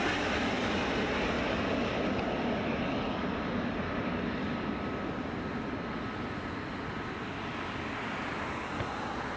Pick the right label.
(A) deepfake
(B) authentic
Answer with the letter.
B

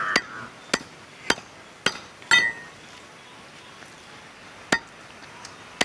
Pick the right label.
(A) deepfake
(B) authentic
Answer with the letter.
B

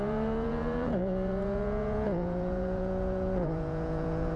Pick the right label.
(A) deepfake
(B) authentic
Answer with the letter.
A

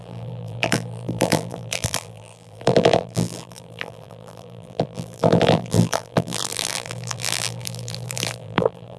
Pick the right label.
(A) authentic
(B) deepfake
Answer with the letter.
B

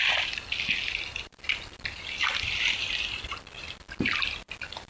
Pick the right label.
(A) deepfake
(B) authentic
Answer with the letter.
B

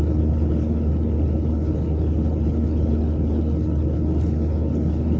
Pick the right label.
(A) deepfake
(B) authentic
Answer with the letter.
A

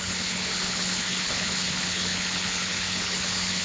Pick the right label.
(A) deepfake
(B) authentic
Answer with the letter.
A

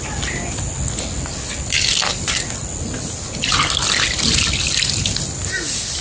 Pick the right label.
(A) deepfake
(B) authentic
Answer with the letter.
B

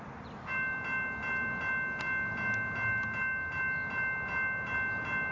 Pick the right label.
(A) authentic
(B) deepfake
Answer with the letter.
A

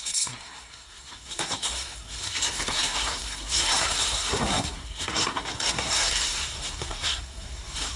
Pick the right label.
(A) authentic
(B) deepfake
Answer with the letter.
B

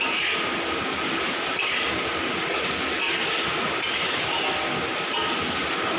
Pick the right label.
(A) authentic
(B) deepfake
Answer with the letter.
A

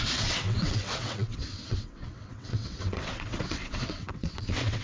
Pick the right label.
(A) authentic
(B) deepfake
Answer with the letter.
B